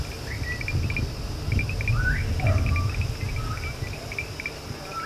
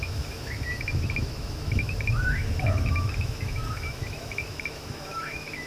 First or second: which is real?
first